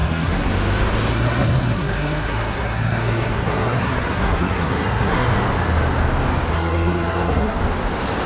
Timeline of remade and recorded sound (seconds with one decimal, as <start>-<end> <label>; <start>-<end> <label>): 0.0-0.5 remade; 0.5-1.1 recorded; 1.1-5.3 remade; 5.3-6.5 recorded; 6.5-7.6 remade; 7.6-8.3 recorded